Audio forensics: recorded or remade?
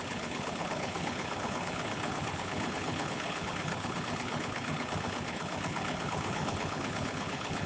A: remade